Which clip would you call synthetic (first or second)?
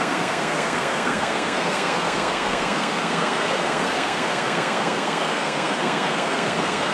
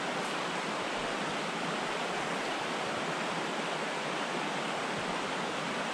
first